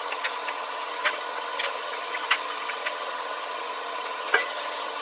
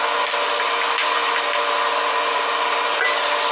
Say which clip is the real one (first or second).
second